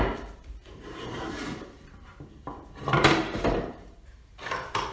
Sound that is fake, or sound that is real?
fake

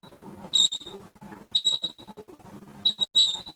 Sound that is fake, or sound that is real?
real